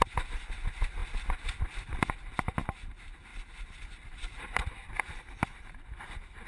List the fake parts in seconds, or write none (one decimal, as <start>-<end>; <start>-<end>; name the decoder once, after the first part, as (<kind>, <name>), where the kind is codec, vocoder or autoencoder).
3.3-4.9 (vocoder, BigVGAN v2)